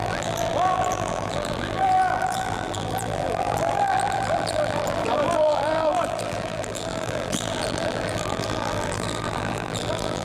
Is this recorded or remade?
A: remade